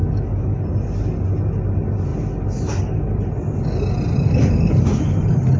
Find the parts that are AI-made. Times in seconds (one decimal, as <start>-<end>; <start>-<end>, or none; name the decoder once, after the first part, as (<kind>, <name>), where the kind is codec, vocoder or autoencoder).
0.0-0.6 (autoencoder, DAC-VAE)